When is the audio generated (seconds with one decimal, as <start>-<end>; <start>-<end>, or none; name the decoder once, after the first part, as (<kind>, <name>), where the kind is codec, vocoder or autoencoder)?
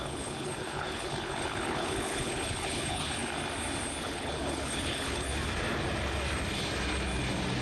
0.0-3.2 (codec, HILCodec); 4.0-5.3